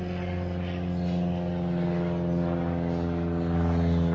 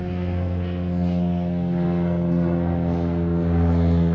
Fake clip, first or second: second